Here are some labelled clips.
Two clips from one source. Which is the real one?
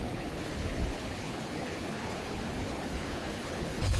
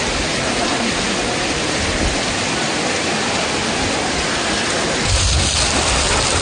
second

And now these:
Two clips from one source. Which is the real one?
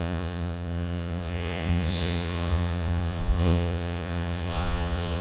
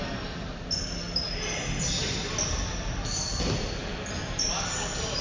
second